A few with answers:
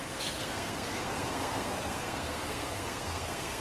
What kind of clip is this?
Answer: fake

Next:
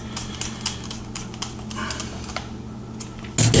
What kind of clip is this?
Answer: real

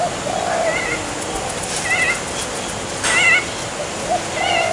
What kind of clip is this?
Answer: real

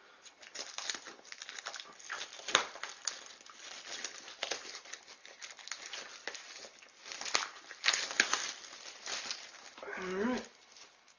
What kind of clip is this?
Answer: real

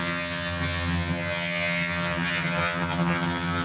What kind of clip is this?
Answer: fake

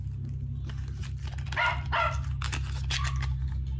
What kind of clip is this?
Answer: real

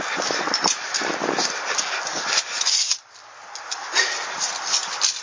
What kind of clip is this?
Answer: real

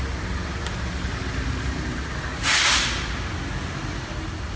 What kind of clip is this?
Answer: real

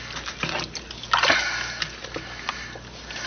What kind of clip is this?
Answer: real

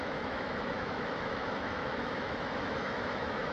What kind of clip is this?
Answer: fake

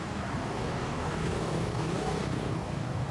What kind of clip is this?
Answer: fake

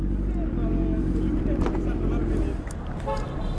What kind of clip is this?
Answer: real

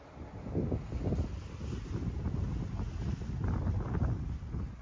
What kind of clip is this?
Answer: real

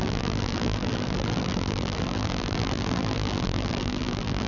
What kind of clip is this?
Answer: fake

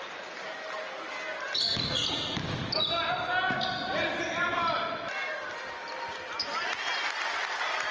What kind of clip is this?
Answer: real